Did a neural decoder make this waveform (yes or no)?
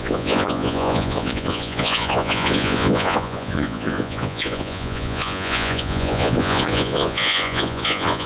yes